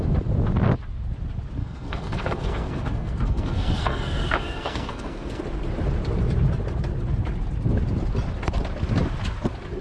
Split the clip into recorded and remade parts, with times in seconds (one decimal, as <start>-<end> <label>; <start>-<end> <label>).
0.0-1.6 recorded; 1.6-5.4 remade; 5.4-9.8 recorded